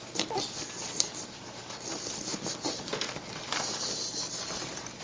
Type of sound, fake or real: real